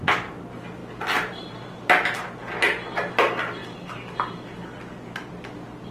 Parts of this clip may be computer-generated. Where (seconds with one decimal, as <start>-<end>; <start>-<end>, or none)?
none